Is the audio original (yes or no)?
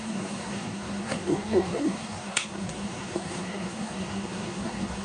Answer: no